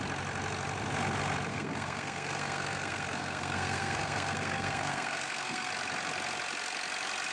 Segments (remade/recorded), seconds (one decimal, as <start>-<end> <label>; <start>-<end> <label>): 0.0-1.5 recorded; 1.5-5.7 remade; 5.7-7.3 recorded